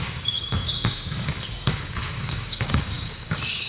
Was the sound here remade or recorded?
remade